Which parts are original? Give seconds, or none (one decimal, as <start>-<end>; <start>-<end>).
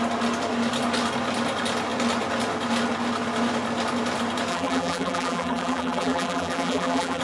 0.0-4.5